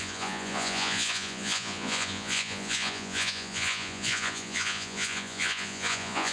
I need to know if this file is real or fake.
fake